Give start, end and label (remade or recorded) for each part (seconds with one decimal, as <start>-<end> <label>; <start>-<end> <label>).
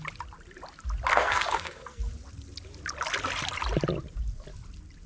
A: 0.0-1.1 recorded; 1.1-2.0 remade; 2.0-5.1 recorded